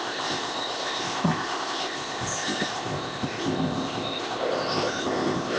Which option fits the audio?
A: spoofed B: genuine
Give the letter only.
A